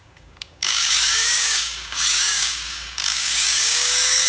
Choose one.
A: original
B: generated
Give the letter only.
B